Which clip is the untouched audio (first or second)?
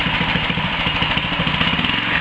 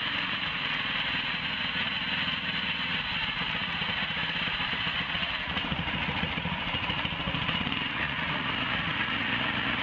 first